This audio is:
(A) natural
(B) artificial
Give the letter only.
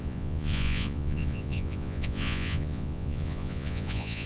B